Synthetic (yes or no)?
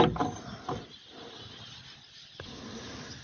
no